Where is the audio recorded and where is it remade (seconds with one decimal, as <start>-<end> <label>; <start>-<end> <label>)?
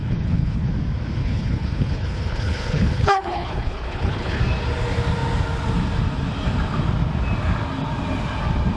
0.0-0.7 remade; 0.7-1.2 recorded; 1.2-4.4 remade; 4.4-8.8 recorded